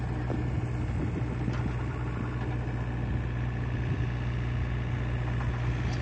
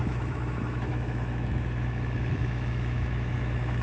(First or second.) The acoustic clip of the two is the first